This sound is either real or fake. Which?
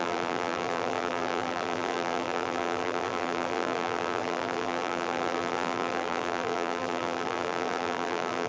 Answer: fake